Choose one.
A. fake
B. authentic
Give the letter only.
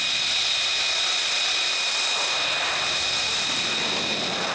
B